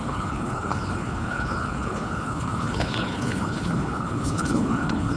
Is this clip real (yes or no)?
no